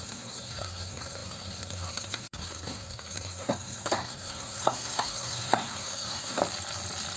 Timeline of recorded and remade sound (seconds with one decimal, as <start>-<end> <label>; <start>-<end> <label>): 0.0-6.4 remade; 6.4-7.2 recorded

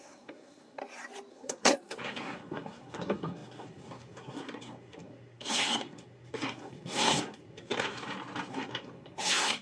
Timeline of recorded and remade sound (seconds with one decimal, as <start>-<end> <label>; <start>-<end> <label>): 0.0-0.8 remade; 0.8-1.3 recorded; 1.3-8.0 remade; 8.0-8.5 recorded; 8.5-9.6 remade

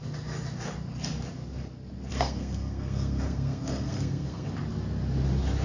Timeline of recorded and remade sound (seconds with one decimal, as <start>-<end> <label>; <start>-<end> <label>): 0.0-2.1 recorded; 2.1-4.5 remade; 4.5-5.6 recorded